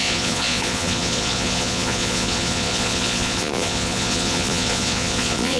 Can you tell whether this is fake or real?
fake